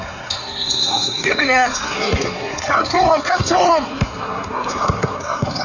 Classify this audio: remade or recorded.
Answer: remade